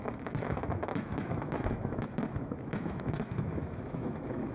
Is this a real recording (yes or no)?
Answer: no